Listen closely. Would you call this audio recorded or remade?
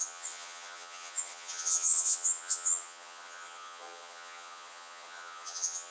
remade